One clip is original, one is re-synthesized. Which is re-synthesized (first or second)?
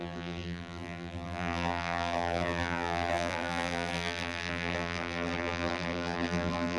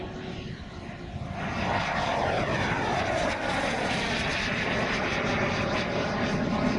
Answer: first